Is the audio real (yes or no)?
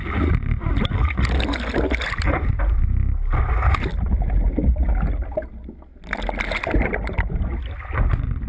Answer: yes